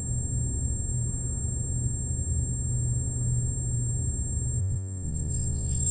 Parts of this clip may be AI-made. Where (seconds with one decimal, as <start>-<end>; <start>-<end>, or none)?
4.6-5.9